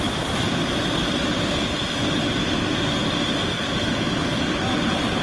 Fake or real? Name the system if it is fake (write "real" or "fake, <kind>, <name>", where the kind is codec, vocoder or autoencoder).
real